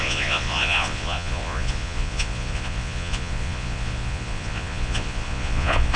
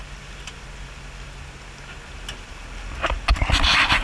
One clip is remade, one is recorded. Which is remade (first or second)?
first